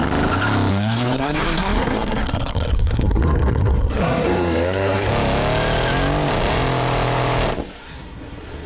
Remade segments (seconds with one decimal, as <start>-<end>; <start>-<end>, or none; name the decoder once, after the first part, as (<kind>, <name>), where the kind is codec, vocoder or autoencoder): 0.7-5.1 (codec, SNAC); 7.8-8.7